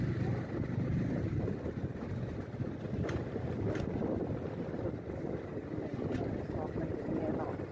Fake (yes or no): no